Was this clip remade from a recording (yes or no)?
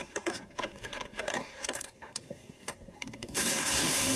yes